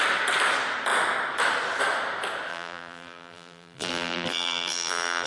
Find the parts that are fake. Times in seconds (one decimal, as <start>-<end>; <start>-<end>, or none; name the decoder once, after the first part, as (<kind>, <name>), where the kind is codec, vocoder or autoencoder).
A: 2.5-5.3 (vocoder, BigVGAN v2)